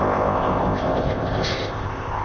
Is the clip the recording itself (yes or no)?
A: no